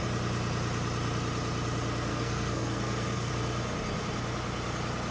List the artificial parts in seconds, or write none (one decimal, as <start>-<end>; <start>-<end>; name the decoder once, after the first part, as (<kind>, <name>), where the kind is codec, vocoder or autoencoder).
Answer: 2.1-3.3 (codec, SNAC)